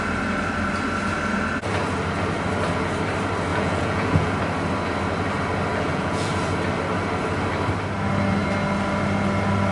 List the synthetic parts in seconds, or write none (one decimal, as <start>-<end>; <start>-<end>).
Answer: 3.5-4.3; 5.7-6.3